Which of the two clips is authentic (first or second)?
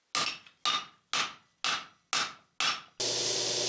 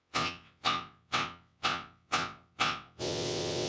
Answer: first